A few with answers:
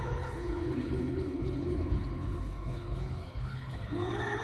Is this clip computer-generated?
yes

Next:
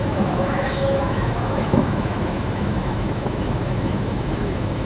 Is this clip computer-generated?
yes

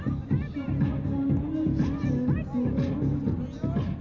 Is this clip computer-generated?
no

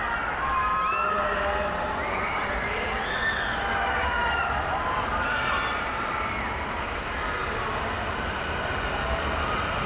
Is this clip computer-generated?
no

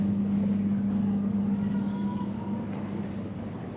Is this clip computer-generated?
yes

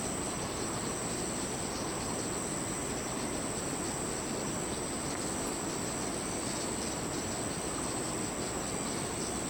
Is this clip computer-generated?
no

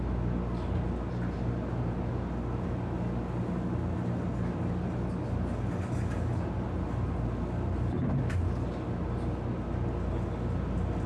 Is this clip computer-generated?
no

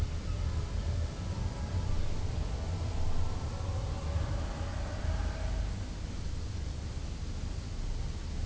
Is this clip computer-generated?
no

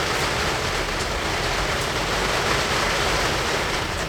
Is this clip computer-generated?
no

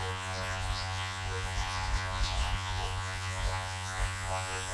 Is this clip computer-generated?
yes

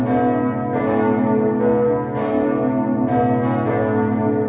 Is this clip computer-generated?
no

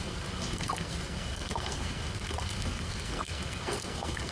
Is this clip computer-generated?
yes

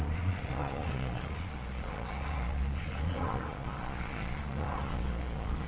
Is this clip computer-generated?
yes